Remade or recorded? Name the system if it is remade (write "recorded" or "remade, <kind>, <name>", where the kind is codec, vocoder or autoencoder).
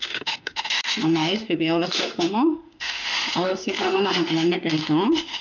remade, autoencoder, DAC-VAE